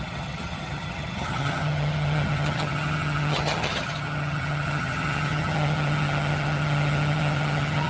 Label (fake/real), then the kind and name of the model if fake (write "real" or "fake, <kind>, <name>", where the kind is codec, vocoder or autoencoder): fake, vocoder, HiFi-GAN